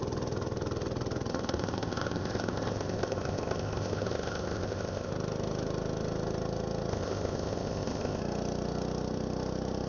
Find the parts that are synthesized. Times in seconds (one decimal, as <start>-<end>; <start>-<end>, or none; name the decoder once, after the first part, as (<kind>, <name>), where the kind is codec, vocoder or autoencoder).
1.3-5.1 (codec, ZipCodec); 6.9-8.2